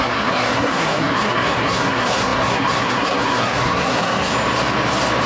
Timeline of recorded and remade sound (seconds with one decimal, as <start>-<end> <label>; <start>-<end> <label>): 0.0-4.3 remade; 4.3-5.3 recorded